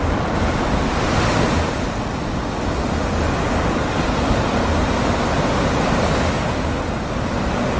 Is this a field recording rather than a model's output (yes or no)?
yes